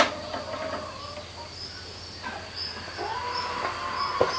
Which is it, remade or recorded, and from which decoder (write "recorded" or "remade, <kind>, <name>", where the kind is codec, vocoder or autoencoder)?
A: recorded